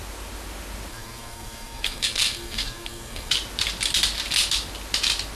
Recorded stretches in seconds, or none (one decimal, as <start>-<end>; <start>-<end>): 0.0-0.9; 3.3-5.4